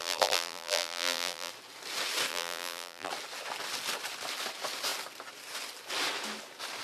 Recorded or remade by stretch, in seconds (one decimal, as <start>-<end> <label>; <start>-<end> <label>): 0.0-1.5 remade; 1.5-2.3 recorded; 2.3-3.1 remade; 3.1-6.8 recorded